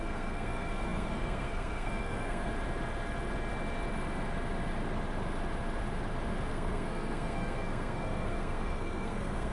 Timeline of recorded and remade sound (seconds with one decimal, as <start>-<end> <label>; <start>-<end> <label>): 0.0-2.5 remade; 2.5-6.5 recorded; 6.5-9.5 remade